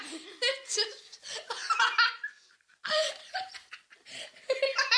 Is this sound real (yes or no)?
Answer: yes